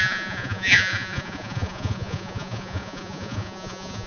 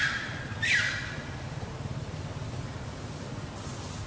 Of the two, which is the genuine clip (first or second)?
second